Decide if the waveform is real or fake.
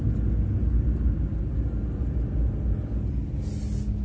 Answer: real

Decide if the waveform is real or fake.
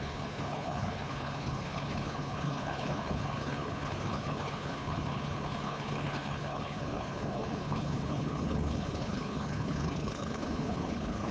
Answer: fake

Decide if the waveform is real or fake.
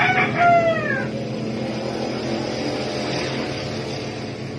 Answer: real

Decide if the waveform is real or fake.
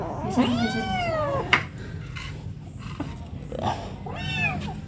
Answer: real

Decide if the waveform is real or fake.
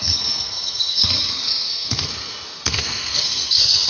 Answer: fake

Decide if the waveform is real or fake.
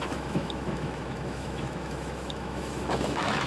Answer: fake